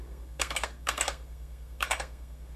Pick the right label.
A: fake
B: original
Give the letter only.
A